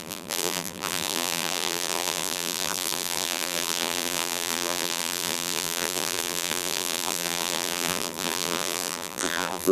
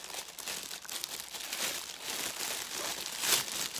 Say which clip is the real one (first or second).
second